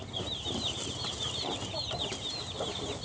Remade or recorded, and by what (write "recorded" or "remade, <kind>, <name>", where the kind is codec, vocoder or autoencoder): recorded